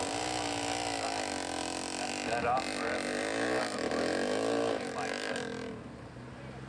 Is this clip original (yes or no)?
yes